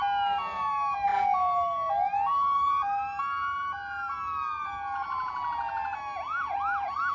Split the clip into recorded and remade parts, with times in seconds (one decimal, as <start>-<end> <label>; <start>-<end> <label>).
0.0-7.1 recorded